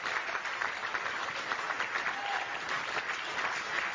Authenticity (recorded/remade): recorded